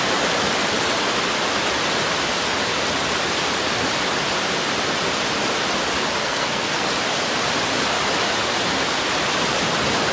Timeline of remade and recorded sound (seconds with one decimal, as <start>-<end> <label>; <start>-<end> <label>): 0.0-6.2 recorded; 6.2-6.9 remade; 6.9-10.1 recorded